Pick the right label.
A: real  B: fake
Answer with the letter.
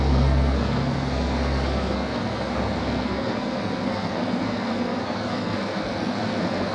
B